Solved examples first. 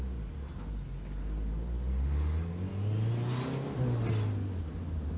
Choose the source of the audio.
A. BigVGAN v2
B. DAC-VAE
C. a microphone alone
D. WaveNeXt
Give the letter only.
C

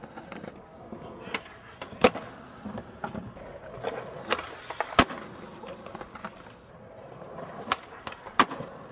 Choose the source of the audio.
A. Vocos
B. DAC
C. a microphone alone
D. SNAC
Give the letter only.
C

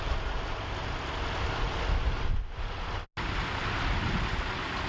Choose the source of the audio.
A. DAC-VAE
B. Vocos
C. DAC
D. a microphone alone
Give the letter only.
D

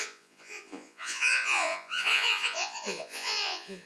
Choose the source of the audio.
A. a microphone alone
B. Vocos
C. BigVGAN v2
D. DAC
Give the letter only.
B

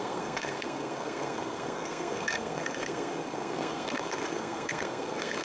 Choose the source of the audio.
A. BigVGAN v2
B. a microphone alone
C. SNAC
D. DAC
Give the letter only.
C